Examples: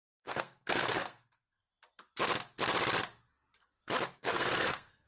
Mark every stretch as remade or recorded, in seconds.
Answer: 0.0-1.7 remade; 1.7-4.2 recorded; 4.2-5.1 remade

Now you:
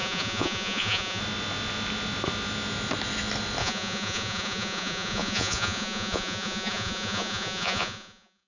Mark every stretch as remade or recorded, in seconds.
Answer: 0.0-1.2 remade; 1.2-3.6 recorded; 3.6-8.5 remade

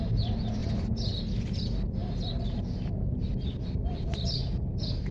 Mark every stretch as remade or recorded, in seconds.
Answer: 0.0-0.6 remade; 0.6-3.7 recorded; 3.7-4.4 remade; 4.4-5.1 recorded